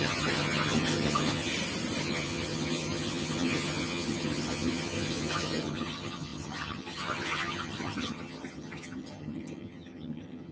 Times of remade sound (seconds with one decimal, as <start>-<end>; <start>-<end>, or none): 0.0-1.5; 2.0-10.5